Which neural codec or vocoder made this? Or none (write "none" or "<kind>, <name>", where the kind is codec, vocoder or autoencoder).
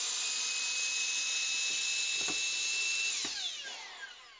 none